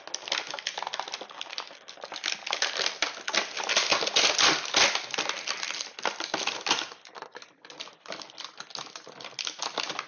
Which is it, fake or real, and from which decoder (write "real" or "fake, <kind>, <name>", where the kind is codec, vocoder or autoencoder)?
real